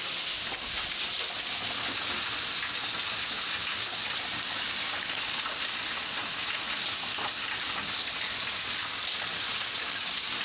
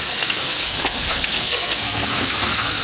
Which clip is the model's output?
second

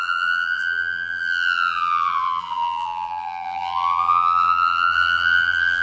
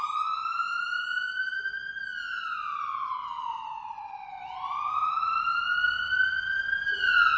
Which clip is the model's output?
first